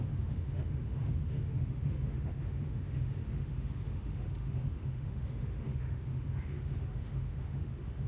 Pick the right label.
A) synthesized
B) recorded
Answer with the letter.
A